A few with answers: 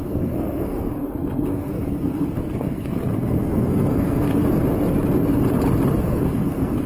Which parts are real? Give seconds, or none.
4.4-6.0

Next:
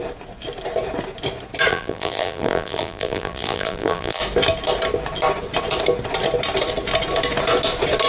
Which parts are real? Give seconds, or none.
0.0-1.7; 4.2-8.1

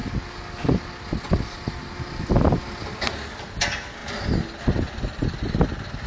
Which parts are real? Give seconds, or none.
0.0-6.1